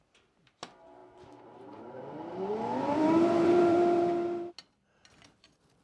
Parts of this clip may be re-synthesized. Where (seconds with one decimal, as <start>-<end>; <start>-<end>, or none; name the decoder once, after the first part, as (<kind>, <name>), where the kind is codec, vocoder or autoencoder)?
1.0-4.5 (vocoder, BigVGAN v2)